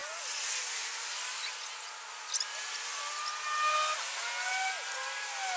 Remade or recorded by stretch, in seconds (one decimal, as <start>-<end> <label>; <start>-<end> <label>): 0.0-5.6 recorded